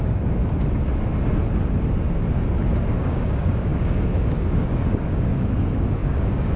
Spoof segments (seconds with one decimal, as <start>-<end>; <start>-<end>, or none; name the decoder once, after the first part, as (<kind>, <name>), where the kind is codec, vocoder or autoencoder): 0.0-0.4 (codec, DAC); 2.9-6.6